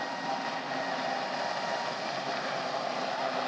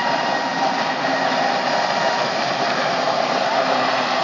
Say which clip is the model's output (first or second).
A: second